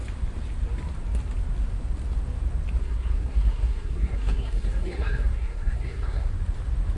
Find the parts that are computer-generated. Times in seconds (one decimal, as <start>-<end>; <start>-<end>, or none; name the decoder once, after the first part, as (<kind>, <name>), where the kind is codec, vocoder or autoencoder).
2.8-6.3 (codec, SNAC)